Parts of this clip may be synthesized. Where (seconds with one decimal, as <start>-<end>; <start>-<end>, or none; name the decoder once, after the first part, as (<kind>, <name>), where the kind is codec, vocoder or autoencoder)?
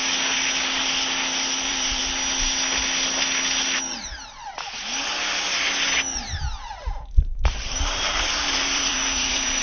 1.6-2.0 (vocoder, BigVGAN v2); 7.2-9.6